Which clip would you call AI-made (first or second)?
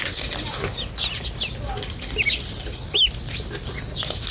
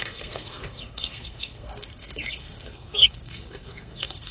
second